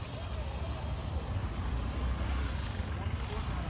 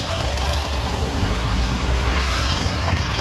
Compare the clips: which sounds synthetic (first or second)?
second